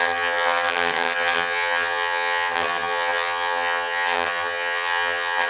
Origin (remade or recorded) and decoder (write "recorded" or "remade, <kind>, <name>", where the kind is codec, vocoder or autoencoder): remade, vocoder, HiFi-GAN